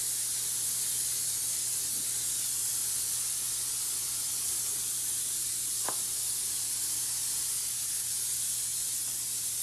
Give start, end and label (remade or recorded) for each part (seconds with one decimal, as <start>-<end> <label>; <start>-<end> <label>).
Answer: 0.0-9.6 recorded